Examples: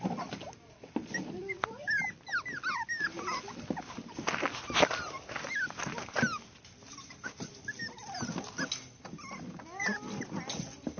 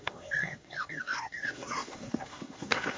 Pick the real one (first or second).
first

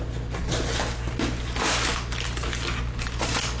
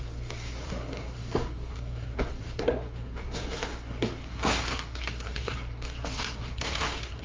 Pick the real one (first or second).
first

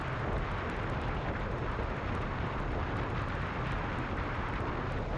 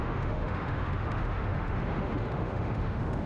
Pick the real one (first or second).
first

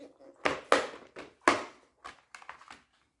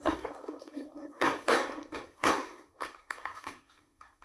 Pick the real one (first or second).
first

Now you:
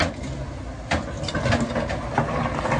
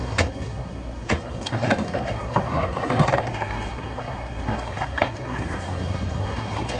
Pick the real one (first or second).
first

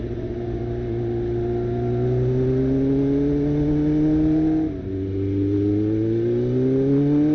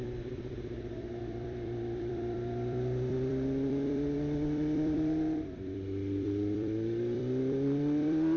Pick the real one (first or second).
first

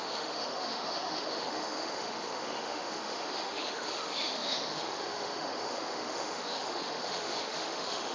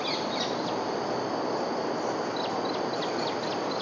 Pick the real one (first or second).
second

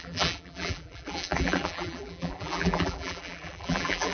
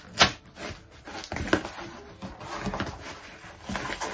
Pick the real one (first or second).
second